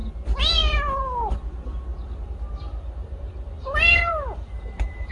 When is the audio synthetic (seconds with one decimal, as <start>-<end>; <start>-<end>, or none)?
1.9-5.1